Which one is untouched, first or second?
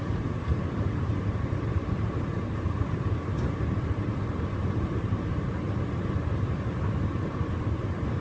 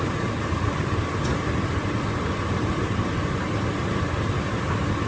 second